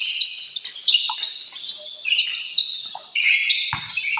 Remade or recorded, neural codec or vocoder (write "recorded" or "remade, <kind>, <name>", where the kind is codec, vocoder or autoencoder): recorded